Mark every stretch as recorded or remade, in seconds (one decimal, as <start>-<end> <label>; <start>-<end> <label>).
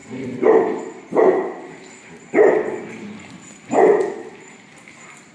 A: 0.0-3.2 remade; 3.2-5.3 recorded